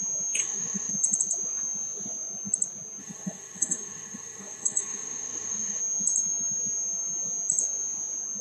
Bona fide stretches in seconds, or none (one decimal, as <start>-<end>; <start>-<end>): 0.0-0.4; 0.9-3.0; 5.8-8.4